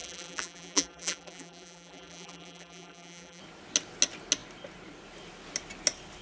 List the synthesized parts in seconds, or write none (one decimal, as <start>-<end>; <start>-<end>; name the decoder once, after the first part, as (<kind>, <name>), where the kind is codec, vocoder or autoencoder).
0.0-3.4 (vocoder, BigVGAN v2)